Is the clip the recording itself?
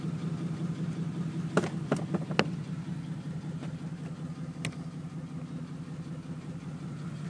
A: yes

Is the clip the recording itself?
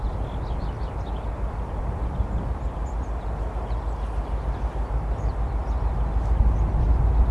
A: yes